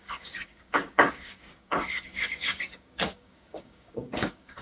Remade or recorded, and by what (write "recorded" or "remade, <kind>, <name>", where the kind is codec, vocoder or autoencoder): remade, codec, DAC